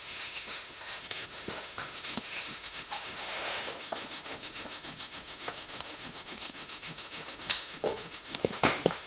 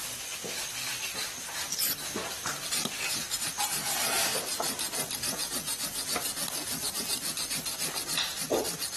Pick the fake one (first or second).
first